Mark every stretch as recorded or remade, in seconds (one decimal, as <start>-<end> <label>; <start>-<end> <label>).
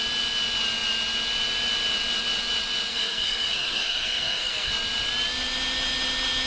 0.0-2.9 recorded; 2.9-4.7 remade; 4.7-6.5 recorded